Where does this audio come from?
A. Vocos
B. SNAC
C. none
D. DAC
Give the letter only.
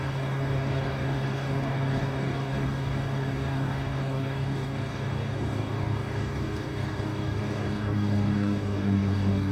D